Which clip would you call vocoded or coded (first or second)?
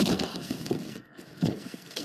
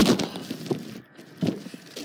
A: first